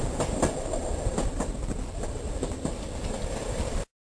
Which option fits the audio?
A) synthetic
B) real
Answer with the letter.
B